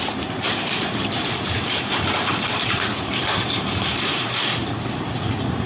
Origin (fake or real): fake